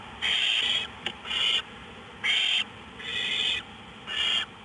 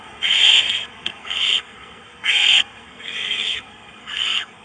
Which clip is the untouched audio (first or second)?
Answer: first